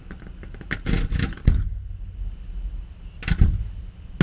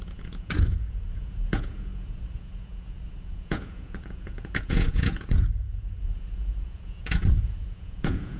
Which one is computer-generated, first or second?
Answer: second